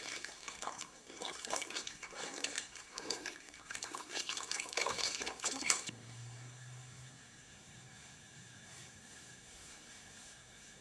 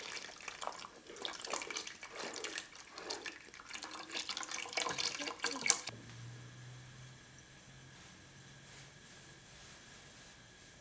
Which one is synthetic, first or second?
first